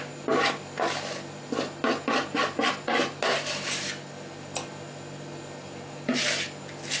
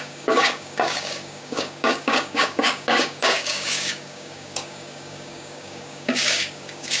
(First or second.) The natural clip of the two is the first